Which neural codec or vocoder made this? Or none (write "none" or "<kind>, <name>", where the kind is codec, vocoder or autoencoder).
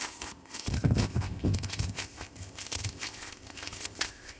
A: codec, ZipCodec